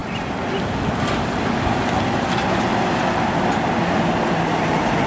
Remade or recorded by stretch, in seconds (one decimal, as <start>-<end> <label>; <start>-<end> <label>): 0.0-5.1 recorded